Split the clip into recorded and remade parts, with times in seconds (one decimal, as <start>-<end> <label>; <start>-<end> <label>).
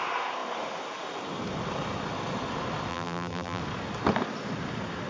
0.0-2.9 recorded; 2.9-3.6 remade; 3.6-5.1 recorded